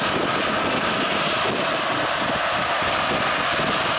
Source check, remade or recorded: recorded